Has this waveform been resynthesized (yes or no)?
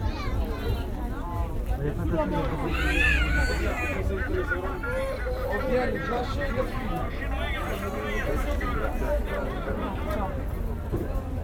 no